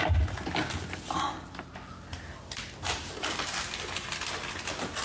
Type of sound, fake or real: real